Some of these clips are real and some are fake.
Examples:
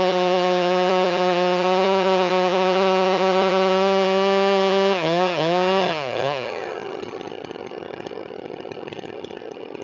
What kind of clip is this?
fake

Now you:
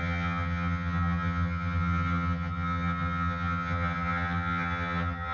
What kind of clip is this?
fake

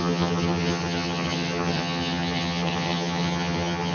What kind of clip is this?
fake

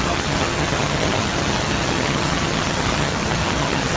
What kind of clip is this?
fake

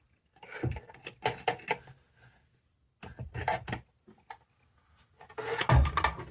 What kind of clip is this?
real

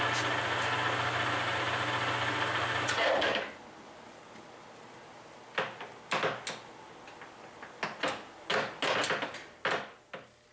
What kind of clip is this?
real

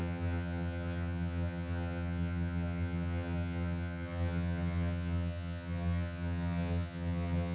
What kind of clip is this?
fake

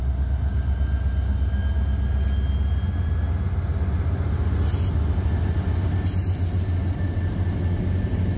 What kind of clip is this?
real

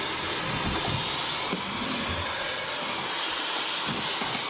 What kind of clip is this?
real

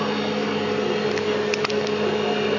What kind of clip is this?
real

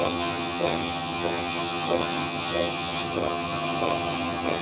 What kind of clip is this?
fake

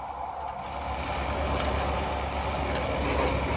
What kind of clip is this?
real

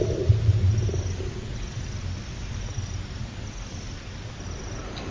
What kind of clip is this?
real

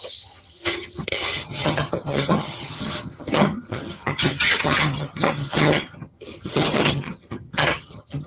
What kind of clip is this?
fake